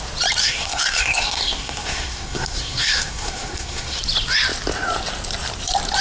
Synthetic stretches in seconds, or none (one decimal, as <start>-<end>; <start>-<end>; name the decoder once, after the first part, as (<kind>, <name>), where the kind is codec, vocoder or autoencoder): 0.4-4.0 (codec, SNAC)